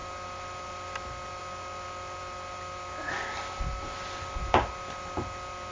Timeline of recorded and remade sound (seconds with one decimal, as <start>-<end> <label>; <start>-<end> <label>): 0.0-5.7 recorded